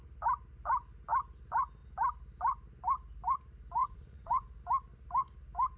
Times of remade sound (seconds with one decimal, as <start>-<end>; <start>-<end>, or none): 3.8-4.6